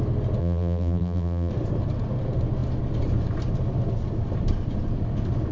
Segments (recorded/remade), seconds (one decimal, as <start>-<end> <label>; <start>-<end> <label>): 0.0-0.4 recorded; 0.4-1.5 remade; 1.5-5.5 recorded